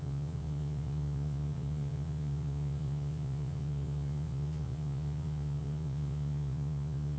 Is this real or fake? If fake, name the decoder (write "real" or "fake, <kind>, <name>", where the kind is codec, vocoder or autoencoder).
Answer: fake, vocoder, Vocos